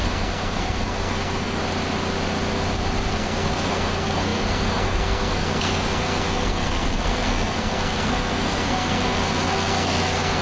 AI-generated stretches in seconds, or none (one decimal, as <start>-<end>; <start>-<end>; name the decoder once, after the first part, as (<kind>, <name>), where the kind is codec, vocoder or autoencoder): 0.0-1.6 (codec, SNAC); 3.1-10.4